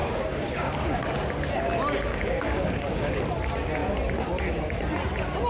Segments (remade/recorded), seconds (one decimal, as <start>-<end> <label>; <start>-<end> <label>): 0.0-1.0 remade; 1.0-2.1 recorded; 2.1-3.2 remade; 3.2-5.5 recorded